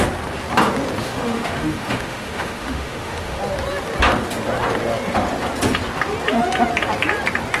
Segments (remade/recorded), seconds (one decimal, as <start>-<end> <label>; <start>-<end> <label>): 0.0-1.0 recorded; 1.0-3.4 remade; 3.4-7.6 recorded